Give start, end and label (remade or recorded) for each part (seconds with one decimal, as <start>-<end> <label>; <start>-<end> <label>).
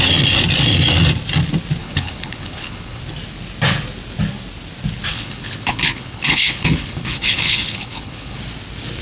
0.0-1.8 recorded; 1.8-3.0 remade; 3.0-5.1 recorded; 5.1-8.4 remade; 8.4-9.0 recorded